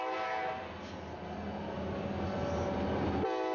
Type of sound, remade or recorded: recorded